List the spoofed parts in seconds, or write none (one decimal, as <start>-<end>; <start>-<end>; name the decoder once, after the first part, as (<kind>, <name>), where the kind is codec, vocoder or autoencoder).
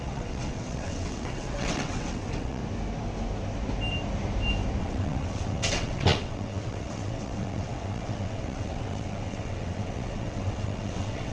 0.0-2.6 (vocoder, WaveNeXt); 4.8-11.3